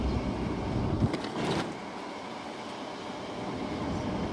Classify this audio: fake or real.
real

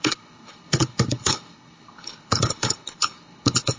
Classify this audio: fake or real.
fake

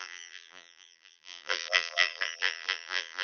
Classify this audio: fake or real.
fake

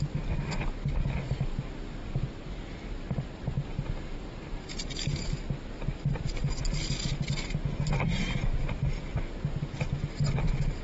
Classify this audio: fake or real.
real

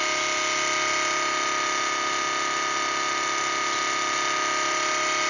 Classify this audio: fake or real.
real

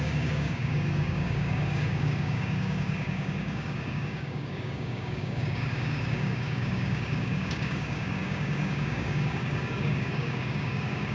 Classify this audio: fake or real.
fake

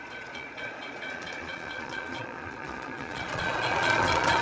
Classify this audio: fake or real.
fake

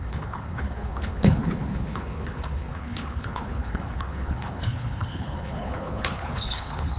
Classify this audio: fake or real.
fake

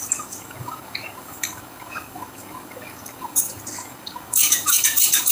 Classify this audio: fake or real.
fake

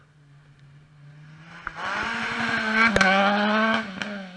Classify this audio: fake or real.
real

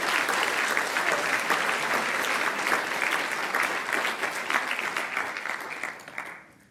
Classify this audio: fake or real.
real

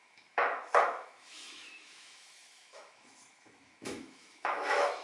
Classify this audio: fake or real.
fake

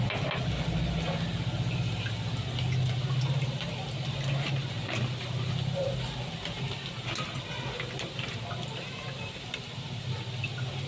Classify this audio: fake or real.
real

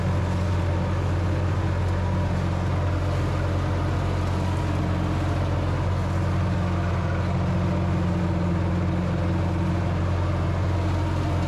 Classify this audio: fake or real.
real